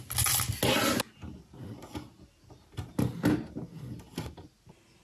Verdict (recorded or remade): recorded